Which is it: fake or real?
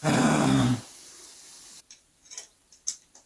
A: fake